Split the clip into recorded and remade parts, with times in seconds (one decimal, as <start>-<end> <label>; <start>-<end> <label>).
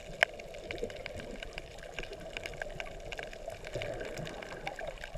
0.0-0.6 recorded; 0.6-2.5 remade; 2.5-4.8 recorded; 4.8-5.2 remade